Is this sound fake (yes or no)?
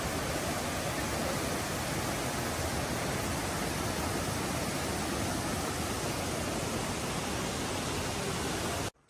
no